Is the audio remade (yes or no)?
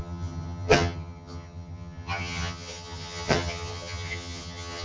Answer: yes